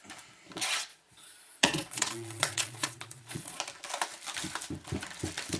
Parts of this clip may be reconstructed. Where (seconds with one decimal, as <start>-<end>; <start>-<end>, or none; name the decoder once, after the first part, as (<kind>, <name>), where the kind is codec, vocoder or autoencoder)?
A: 0.9-3.6 (vocoder, Vocos)